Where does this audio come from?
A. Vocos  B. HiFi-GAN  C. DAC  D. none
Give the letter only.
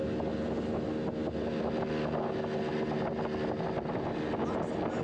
D